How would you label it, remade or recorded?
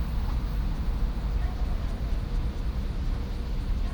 recorded